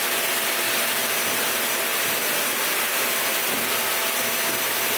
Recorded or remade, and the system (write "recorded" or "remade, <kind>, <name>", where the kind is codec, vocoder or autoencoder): recorded